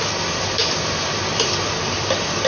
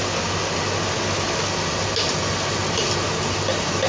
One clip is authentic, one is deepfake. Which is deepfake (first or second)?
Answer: first